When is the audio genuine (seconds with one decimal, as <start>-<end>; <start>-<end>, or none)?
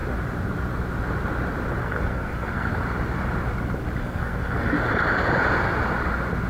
0.0-1.8; 2.7-4.0; 4.9-6.5